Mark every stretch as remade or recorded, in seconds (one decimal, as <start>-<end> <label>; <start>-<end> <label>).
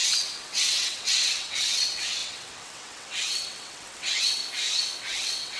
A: 0.0-4.4 remade; 4.4-5.0 recorded; 5.0-5.6 remade